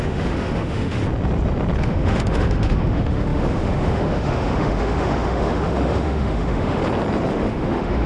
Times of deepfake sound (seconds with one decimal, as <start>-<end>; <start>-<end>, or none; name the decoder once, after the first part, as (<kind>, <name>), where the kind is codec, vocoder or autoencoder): 0.0-1.0 (autoencoder, DAC-VAE); 1.8-6.8; 7.3-8.1